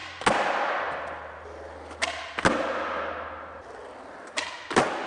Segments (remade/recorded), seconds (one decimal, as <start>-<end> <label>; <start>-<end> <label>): 0.0-5.1 recorded